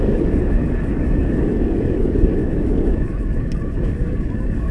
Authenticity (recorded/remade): remade